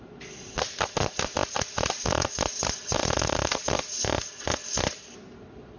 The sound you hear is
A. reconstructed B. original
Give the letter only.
B